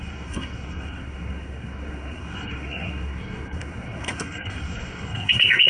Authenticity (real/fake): fake